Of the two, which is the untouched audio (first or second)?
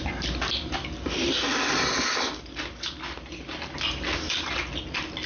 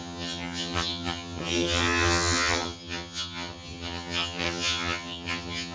first